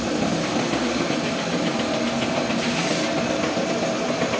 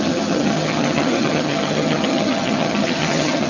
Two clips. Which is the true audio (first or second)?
first